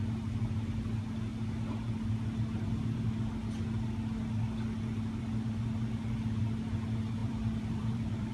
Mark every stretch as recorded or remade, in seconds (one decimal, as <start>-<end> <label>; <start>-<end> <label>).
0.0-7.2 recorded; 7.2-8.3 remade